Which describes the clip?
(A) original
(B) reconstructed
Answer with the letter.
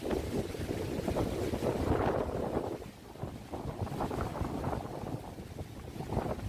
A